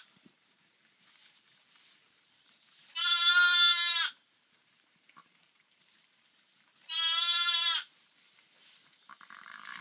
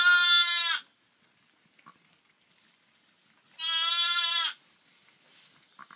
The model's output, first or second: first